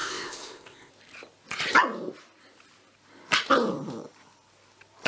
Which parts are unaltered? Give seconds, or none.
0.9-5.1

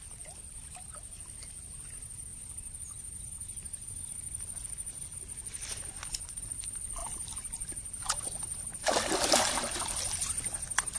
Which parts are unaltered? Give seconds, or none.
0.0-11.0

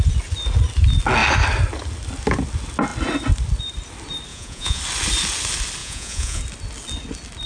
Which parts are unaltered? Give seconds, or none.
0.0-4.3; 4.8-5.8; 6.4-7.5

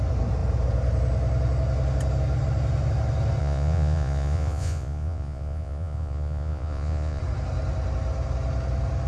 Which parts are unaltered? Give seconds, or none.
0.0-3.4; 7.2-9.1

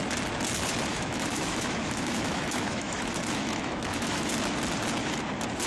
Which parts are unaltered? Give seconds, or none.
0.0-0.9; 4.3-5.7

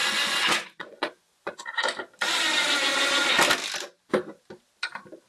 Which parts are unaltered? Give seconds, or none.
1.6-5.3